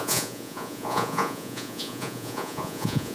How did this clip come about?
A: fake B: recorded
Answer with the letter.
A